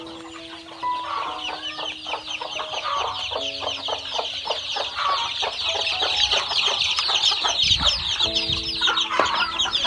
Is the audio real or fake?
real